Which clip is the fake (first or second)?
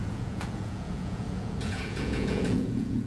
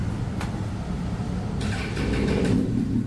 first